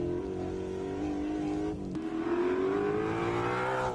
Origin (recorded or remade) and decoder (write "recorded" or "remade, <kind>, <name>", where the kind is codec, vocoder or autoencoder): recorded